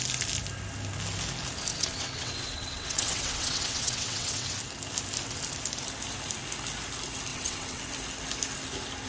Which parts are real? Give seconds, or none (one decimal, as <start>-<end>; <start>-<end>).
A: 0.0-1.7; 4.6-7.3; 7.8-9.1